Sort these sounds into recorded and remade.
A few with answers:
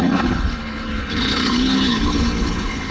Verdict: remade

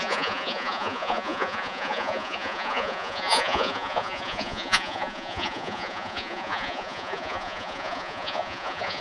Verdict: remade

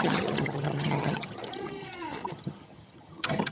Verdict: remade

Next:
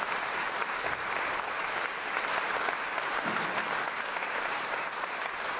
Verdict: remade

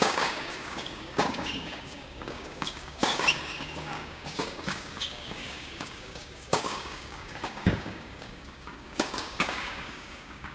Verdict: remade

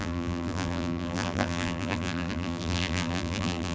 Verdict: remade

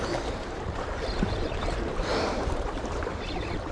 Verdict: remade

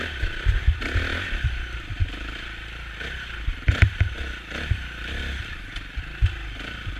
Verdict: recorded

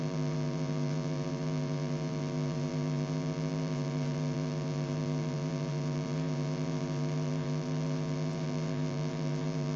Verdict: remade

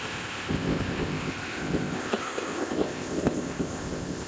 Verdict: remade